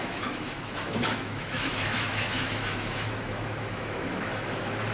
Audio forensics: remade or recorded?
remade